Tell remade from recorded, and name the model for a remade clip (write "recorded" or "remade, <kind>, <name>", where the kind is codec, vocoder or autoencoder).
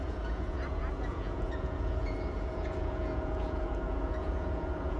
remade, vocoder, Vocos